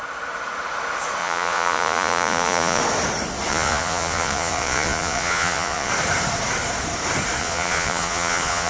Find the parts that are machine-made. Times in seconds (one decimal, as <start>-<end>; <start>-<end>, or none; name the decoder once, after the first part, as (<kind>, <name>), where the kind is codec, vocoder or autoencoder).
1.2-2.8 (vocoder, Vocos); 3.5-5.9; 7.4-8.7